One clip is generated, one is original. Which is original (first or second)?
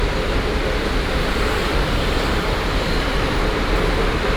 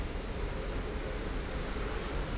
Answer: second